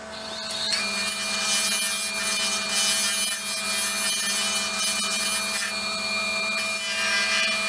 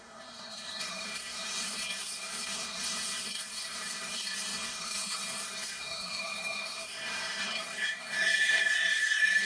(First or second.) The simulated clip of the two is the second